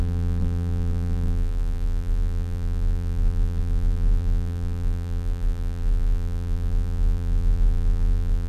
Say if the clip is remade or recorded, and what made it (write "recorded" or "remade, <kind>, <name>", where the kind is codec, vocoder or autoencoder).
remade, vocoder, BigVGAN v2